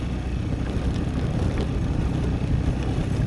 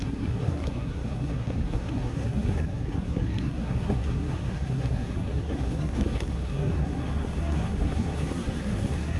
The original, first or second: first